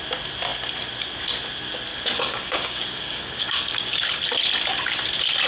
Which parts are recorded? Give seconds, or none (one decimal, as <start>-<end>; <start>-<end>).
0.0-1.9; 4.2-5.5